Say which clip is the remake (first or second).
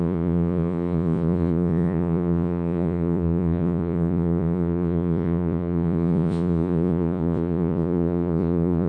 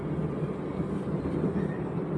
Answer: first